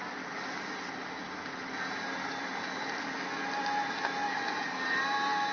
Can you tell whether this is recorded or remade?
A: recorded